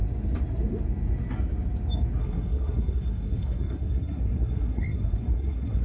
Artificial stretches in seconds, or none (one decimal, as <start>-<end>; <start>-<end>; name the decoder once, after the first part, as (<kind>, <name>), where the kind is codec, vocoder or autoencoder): 2.2-5.8 (codec, SNAC)